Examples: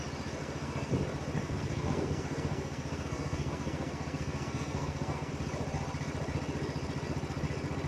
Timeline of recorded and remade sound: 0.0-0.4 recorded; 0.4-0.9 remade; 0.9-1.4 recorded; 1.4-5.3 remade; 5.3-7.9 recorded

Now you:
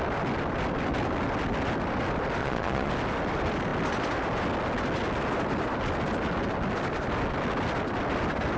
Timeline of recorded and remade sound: 0.0-2.4 recorded; 2.4-2.9 remade; 2.9-8.6 recorded